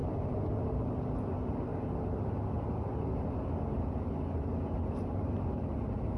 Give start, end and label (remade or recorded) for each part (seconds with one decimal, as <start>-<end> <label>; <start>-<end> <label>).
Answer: 0.0-6.2 recorded